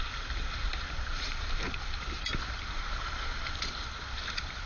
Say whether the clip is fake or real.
fake